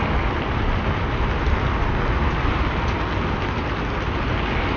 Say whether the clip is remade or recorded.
recorded